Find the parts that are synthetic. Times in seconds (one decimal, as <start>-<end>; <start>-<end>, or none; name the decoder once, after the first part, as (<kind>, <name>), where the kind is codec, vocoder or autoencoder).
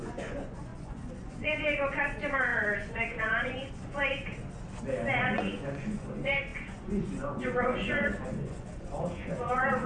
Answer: 0.0-4.3 (vocoder, Vocos); 5.2-9.9